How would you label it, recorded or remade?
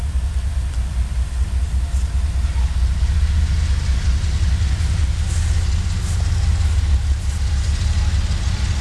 recorded